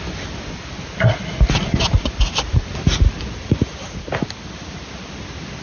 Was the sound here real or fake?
real